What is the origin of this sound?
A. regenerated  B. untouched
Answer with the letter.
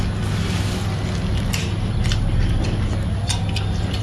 B